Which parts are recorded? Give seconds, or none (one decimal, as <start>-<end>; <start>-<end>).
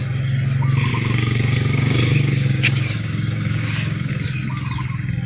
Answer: 0.0-0.9; 4.1-5.3